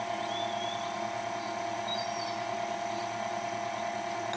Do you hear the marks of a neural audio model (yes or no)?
no